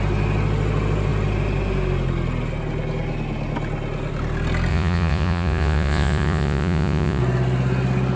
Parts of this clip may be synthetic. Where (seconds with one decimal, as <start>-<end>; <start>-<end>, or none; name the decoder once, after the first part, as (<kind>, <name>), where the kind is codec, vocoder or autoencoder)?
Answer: 4.7-7.2 (vocoder, Vocos)

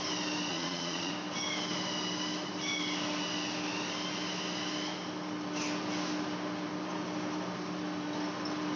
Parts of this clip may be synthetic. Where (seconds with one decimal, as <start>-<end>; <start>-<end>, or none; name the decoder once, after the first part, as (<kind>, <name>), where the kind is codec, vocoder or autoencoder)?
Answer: 0.5-1.1 (vocoder, Vocos)

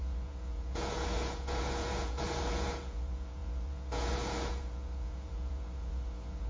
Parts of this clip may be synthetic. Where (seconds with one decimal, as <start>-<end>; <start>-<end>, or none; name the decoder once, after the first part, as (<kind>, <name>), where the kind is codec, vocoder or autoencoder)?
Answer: 0.0-6.5 (vocoder, Vocos)

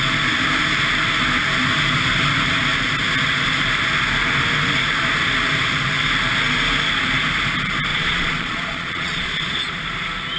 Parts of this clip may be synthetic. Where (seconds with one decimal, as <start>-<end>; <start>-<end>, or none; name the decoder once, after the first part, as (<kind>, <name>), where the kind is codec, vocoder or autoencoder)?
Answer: 7.9-9.7 (vocoder, Vocos)

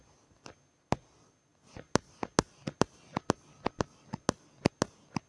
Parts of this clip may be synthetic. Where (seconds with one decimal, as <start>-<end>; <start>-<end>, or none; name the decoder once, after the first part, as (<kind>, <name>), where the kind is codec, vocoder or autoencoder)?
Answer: none

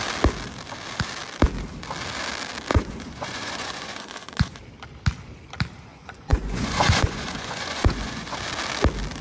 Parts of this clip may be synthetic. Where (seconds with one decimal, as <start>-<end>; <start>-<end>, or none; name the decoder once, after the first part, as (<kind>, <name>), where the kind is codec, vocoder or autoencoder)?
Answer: 2.7-4.6 (vocoder, Vocos); 5.9-8.4